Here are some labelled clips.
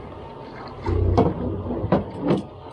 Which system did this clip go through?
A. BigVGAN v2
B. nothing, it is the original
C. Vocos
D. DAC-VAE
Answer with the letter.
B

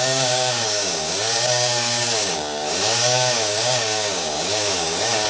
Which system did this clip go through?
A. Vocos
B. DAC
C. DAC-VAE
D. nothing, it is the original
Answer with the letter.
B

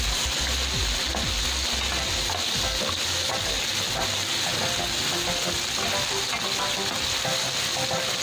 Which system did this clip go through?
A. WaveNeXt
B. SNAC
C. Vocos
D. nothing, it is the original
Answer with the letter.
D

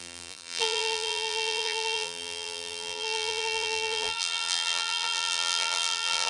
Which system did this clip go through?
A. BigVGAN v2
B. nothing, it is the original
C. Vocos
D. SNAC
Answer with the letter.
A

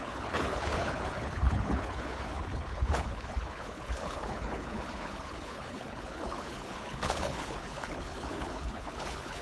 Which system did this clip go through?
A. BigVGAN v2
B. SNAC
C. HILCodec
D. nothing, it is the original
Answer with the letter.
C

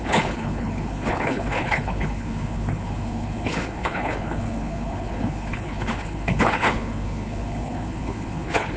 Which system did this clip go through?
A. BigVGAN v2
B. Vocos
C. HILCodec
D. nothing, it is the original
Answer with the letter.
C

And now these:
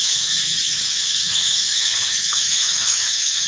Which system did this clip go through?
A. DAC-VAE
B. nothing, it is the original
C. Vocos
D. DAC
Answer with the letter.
A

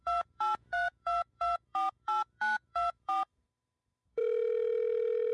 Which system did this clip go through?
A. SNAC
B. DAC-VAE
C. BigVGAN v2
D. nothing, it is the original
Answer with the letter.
B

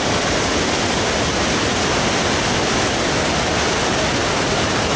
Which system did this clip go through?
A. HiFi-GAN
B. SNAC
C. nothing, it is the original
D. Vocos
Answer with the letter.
C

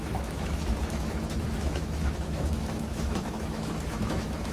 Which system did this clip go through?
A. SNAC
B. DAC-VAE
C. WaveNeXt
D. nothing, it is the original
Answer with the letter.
B